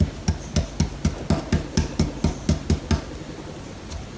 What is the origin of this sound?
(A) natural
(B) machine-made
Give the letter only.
A